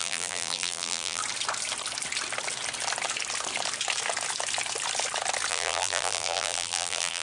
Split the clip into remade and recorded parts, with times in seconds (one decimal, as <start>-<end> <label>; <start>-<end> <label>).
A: 0.0-1.2 remade; 1.2-5.5 recorded; 5.5-7.2 remade